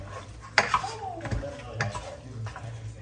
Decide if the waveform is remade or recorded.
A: recorded